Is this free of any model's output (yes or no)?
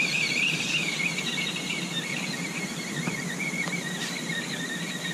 yes